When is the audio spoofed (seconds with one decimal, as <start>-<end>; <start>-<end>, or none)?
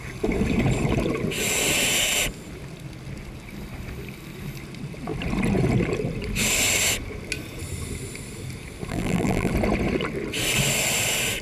8.9-9.5